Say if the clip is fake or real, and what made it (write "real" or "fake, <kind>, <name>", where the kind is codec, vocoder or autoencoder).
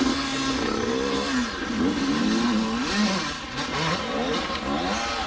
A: real